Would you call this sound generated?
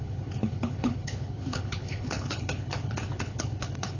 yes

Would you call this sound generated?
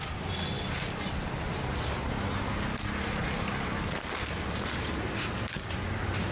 no